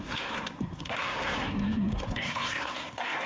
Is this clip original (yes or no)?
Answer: no